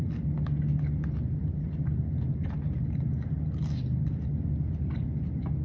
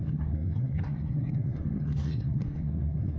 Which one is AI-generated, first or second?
second